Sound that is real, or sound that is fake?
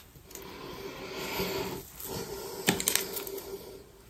real